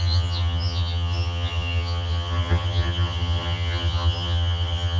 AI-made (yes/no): yes